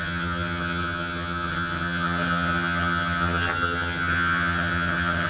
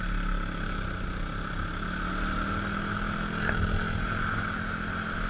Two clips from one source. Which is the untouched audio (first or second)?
second